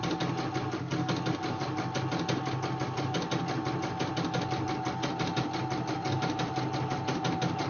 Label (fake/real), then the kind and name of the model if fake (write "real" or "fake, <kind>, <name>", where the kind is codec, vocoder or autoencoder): real